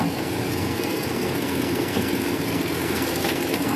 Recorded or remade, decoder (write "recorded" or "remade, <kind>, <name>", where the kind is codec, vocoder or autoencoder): remade, codec, SNAC